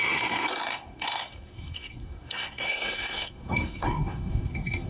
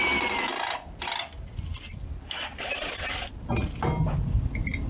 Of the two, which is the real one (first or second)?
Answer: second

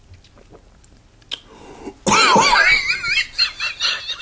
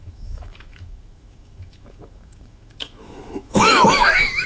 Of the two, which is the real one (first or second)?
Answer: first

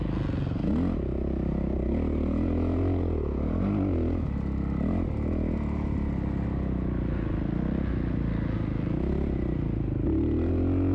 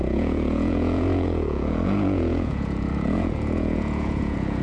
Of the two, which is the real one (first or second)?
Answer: first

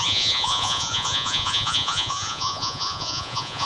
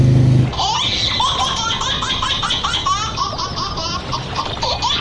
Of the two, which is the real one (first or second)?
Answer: second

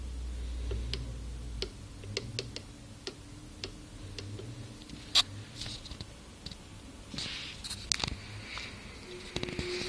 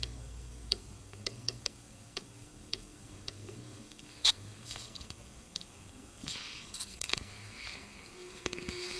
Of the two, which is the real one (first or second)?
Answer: first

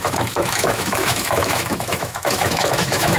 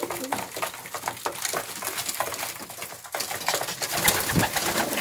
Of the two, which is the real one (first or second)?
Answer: second